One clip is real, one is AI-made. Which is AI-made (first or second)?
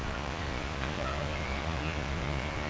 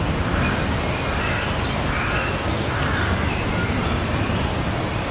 first